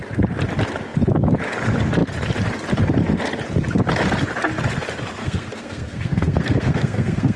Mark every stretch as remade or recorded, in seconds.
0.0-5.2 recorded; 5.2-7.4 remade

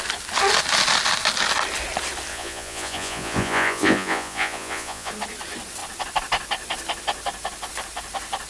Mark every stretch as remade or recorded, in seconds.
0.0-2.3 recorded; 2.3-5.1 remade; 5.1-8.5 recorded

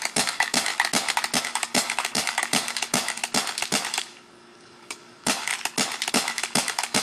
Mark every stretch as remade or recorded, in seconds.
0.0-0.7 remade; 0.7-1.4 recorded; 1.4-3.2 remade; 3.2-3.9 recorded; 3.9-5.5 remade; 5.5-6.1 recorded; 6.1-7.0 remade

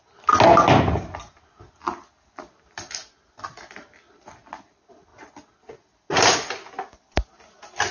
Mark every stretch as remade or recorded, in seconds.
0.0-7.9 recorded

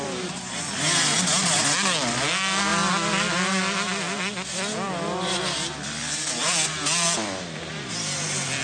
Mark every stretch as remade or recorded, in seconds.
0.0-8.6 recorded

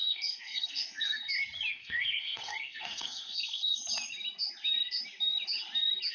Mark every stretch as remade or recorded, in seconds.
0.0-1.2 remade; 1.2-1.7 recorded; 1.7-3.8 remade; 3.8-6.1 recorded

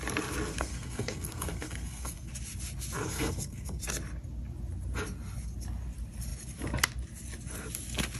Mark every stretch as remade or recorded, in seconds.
0.0-0.5 recorded; 0.5-2.3 remade; 2.3-3.0 recorded; 3.0-3.8 remade; 3.8-8.2 recorded

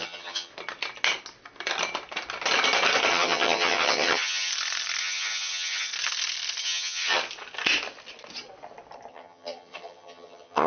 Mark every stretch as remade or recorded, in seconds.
0.0-0.5 remade; 0.5-3.1 recorded; 3.1-4.5 remade; 4.5-5.0 recorded; 5.0-5.9 remade; 5.9-6.6 recorded; 6.6-7.2 remade; 7.2-9.1 recorded; 9.1-10.7 remade